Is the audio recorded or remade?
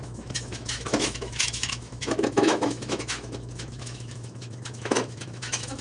remade